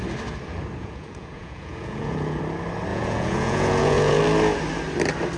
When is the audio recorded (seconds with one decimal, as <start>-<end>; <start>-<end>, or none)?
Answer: 0.0-0.8; 2.4-2.9; 4.2-5.4